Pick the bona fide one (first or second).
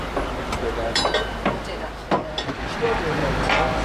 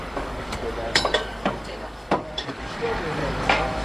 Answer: first